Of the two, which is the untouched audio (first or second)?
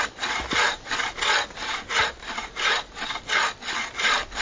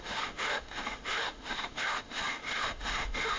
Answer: first